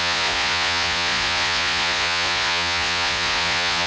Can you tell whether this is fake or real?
fake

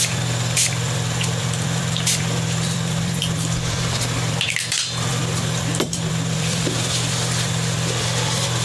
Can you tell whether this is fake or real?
fake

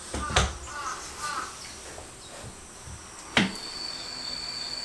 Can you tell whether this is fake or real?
real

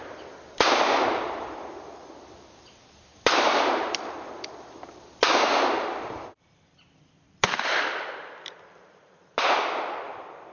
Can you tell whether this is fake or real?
fake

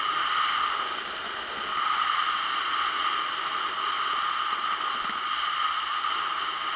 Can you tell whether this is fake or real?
real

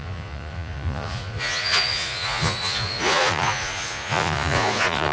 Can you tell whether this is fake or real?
fake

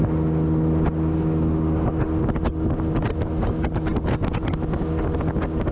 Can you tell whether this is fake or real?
real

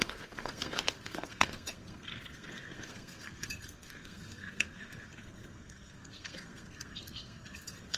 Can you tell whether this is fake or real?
fake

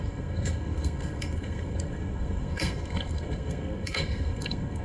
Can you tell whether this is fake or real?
fake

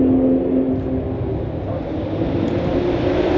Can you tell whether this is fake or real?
real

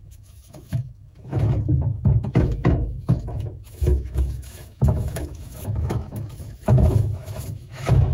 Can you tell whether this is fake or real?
fake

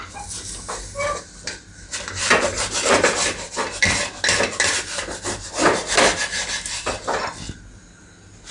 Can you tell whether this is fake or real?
real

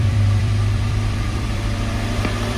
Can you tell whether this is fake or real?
fake